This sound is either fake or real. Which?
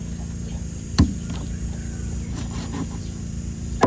fake